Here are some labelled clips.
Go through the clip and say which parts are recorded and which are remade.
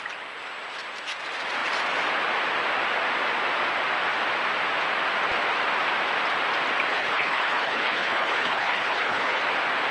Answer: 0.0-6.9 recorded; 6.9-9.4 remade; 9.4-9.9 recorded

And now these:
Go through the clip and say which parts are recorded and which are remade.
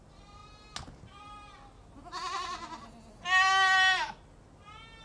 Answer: 0.0-5.0 recorded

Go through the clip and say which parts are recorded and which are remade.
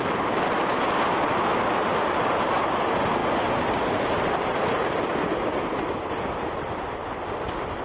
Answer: 0.0-7.8 recorded